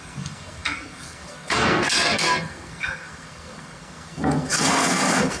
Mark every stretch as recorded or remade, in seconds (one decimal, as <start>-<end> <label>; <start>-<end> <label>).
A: 0.0-5.4 remade